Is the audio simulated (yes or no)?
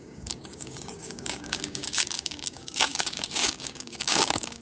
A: yes